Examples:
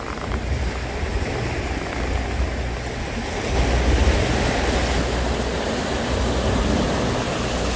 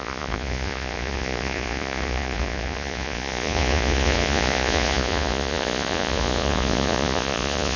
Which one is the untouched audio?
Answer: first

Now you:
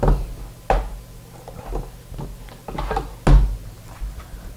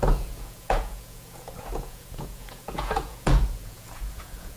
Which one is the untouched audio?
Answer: first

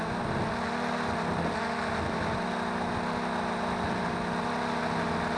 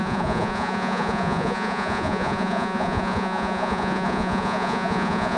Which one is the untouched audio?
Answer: first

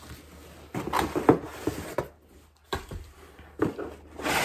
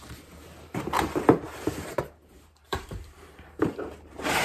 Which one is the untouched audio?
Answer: first